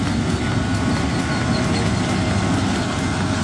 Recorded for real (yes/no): yes